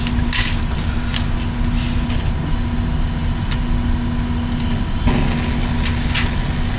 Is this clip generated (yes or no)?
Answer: no